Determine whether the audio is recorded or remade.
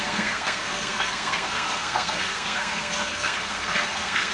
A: remade